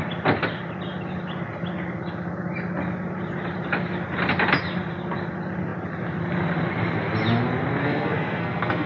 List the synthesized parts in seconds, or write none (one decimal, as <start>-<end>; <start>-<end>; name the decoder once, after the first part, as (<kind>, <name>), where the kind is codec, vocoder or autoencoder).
7.8-8.9 (codec, SNAC)